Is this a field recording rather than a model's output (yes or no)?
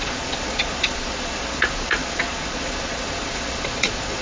no